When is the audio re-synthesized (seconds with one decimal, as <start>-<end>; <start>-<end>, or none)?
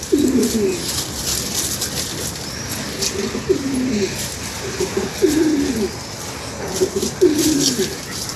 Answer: none